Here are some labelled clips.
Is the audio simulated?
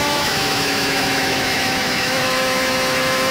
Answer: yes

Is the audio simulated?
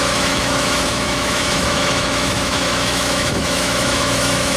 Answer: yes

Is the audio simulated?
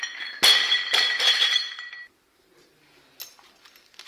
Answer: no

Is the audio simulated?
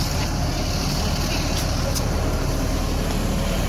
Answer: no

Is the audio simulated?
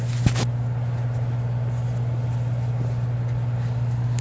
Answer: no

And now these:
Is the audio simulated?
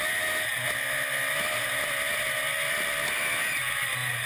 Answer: no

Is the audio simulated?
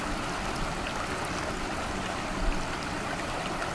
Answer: no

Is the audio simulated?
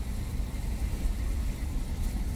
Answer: no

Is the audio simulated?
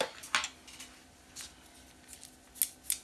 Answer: no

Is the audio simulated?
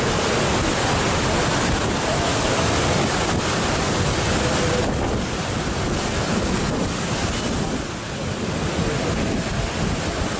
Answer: no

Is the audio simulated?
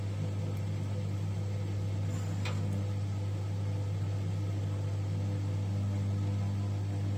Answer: no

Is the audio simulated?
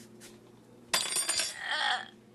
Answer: no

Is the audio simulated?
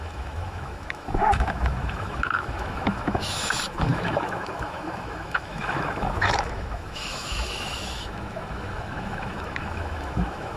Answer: yes